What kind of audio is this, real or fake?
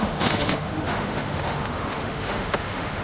fake